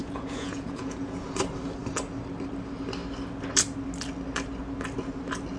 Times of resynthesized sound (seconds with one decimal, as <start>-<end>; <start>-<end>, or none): 0.0-1.2